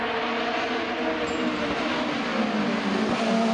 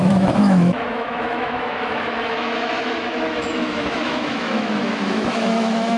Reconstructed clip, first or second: second